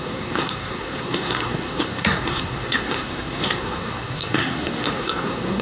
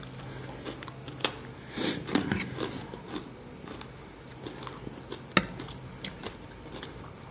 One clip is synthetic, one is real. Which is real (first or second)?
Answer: second